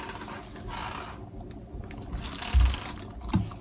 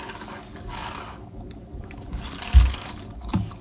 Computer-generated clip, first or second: second